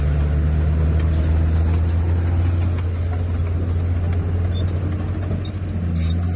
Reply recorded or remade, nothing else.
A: recorded